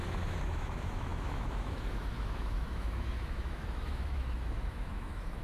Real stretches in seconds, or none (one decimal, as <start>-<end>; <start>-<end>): none